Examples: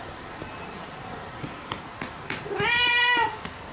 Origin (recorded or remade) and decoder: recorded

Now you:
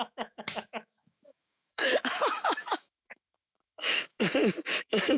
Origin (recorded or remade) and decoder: remade, autoencoder, DAC-VAE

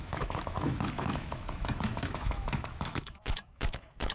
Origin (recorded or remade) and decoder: remade, autoencoder, DAC-VAE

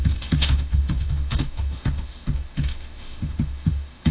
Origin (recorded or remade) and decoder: remade, autoencoder, DAC-VAE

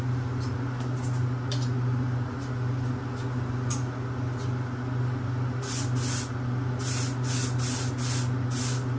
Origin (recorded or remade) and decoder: recorded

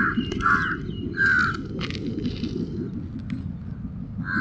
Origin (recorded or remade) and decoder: recorded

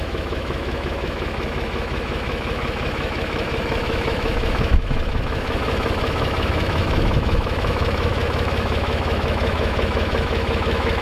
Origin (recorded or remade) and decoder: remade, autoencoder, DAC-VAE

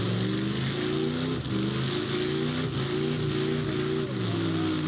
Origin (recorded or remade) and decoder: recorded